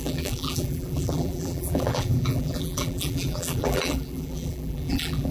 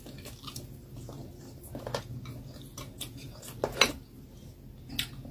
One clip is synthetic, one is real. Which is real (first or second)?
second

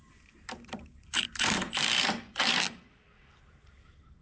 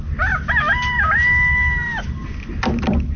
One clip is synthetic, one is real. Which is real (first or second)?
second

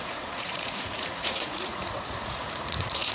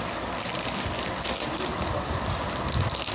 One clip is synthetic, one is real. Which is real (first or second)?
second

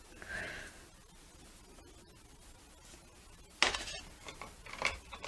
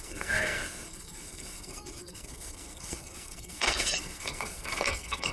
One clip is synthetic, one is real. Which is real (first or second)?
first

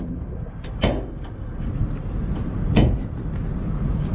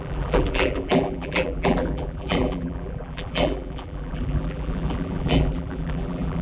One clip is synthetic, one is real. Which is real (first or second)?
first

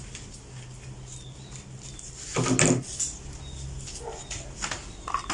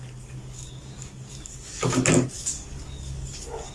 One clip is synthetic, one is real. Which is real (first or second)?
first